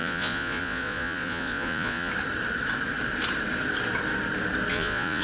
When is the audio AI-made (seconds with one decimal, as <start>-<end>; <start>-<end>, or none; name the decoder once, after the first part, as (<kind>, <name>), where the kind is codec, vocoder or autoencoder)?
0.0-2.1 (vocoder, Vocos); 4.7-5.2